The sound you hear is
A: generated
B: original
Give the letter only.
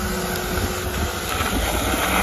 B